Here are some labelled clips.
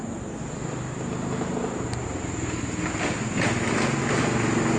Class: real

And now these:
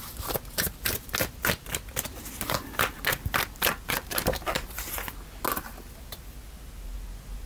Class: real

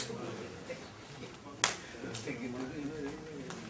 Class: real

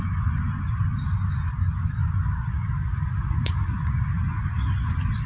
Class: real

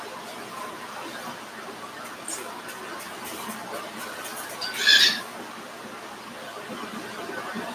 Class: real